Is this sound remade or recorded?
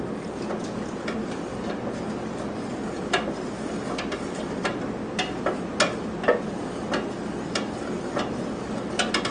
recorded